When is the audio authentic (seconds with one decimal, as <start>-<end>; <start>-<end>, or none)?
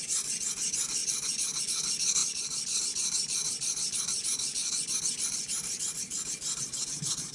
4.6-5.3